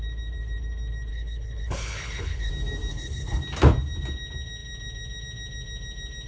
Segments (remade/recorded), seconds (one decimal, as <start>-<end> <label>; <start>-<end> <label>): 0.0-1.1 recorded; 1.1-2.5 remade; 2.5-2.9 recorded; 2.9-3.4 remade; 3.4-6.3 recorded